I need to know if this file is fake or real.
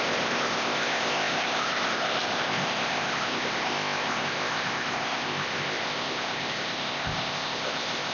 fake